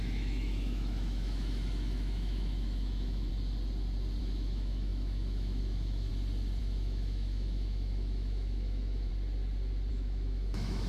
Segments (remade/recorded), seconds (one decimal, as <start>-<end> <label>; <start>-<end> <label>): 0.0-3.3 remade; 3.3-4.2 recorded; 4.2-6.1 remade; 6.1-6.6 recorded; 6.6-9.1 remade; 9.1-9.9 recorded; 9.9-10.9 remade